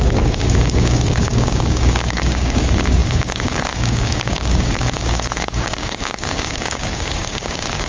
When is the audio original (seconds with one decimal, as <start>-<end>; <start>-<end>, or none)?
none